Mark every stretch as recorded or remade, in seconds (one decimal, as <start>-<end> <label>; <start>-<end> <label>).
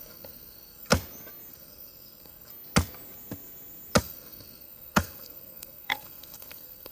0.0-0.9 remade; 0.9-1.5 recorded; 1.5-2.5 remade; 2.5-4.0 recorded; 4.0-6.9 remade